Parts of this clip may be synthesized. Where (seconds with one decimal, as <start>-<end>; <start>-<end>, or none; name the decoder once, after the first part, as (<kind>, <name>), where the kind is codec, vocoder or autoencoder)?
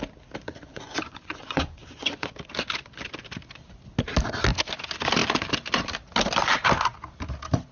0.4-2.3 (vocoder, Vocos)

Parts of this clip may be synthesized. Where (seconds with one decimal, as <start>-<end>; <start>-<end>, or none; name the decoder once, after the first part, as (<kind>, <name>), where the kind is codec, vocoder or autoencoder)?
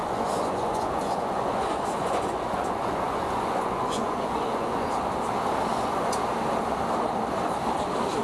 0.0-4.9 (vocoder, Vocos); 5.7-6.3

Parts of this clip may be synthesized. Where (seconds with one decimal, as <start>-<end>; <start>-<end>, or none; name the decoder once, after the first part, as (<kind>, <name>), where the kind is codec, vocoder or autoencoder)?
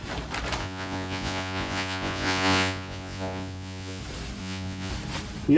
0.6-4.0 (vocoder, Vocos); 4.4-4.9